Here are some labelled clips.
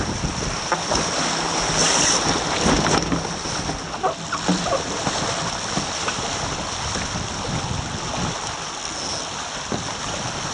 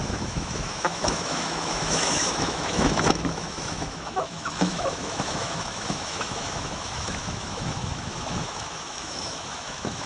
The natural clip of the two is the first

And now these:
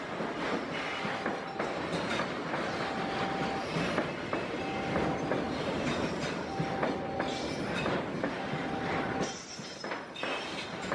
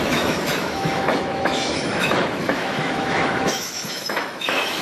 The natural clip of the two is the first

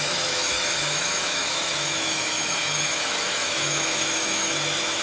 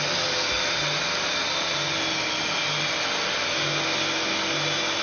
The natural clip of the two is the second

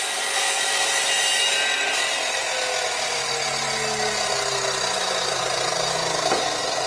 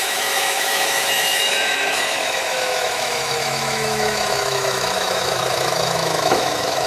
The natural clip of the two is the first